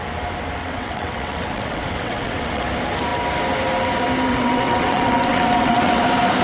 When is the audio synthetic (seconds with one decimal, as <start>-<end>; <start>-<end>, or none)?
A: 0.6-2.6; 4.3-6.0